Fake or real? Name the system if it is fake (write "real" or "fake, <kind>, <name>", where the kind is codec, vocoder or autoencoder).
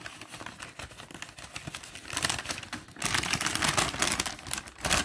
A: real